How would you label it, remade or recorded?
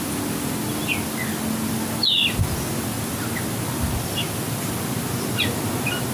recorded